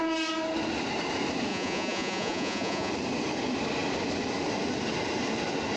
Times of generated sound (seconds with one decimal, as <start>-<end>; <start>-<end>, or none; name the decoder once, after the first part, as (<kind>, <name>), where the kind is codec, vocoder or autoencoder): 1.5-2.9 (vocoder, Vocos)